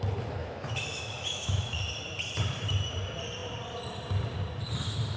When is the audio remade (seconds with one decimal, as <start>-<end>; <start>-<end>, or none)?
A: 0.4-1.8